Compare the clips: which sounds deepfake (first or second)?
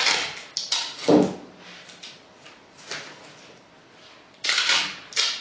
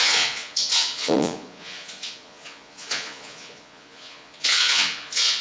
second